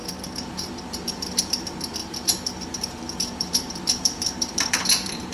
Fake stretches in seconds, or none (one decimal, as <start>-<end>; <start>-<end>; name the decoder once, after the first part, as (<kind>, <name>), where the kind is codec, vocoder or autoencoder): 0.0-1.4 (vocoder, BigVGAN v2); 2.0-5.3